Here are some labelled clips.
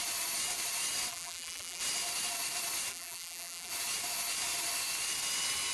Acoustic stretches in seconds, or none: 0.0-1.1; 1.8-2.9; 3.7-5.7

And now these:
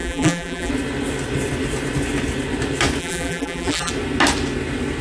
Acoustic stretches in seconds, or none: 0.7-3.0; 3.9-5.0

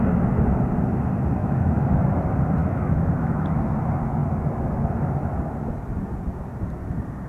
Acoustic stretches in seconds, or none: 0.0-1.4; 2.2-2.6; 3.6-7.3

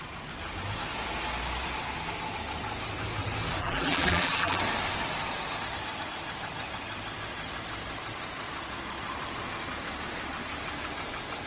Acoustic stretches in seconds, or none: 0.0-3.6; 4.6-11.5